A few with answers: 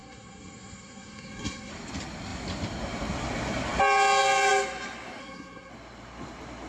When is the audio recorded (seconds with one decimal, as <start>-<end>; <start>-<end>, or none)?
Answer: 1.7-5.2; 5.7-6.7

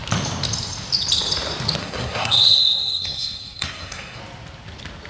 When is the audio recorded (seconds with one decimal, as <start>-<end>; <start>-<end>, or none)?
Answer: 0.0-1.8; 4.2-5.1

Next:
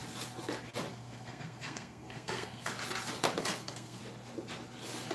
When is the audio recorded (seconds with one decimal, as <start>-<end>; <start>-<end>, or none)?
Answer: 0.0-0.9; 2.7-3.4; 4.0-5.1